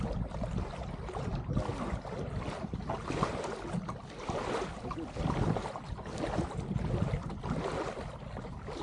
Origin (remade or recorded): recorded